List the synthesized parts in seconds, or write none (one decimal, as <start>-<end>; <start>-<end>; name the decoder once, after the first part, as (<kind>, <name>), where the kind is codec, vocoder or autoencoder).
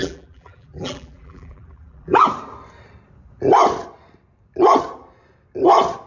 0.0-2.2 (vocoder, BigVGAN v2)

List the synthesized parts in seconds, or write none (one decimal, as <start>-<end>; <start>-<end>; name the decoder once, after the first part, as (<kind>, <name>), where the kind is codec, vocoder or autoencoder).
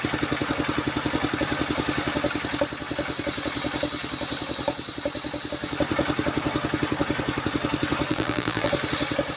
8.1-8.7 (vocoder, BigVGAN v2)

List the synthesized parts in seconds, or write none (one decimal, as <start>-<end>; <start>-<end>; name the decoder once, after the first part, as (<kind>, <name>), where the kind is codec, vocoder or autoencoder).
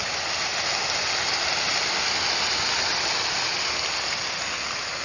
none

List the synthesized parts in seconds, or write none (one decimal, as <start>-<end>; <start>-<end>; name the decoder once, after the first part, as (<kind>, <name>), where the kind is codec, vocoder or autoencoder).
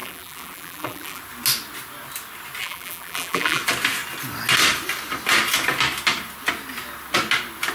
0.0-1.2 (vocoder, BigVGAN v2); 2.6-3.6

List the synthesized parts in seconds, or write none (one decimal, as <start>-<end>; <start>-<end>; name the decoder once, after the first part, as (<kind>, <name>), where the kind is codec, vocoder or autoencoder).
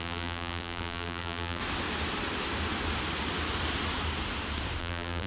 0.0-1.6 (vocoder, BigVGAN v2); 4.8-5.3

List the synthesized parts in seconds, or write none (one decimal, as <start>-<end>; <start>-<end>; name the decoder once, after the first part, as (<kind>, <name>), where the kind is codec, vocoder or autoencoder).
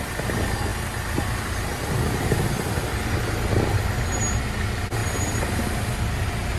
5.0-5.6 (vocoder, BigVGAN v2)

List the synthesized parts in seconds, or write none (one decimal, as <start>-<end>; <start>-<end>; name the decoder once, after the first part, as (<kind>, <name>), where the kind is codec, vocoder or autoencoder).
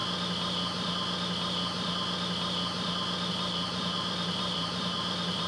3.3-5.5 (vocoder, BigVGAN v2)